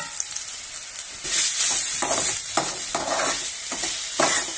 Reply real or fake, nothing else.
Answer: real